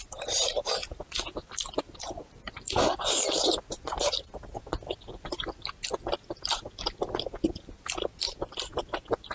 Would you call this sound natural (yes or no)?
yes